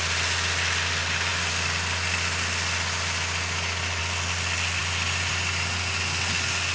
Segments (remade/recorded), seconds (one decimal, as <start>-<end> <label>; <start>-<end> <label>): 0.0-6.7 recorded